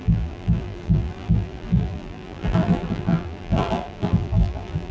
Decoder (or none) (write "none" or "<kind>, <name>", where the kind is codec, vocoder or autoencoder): vocoder, BigVGAN v2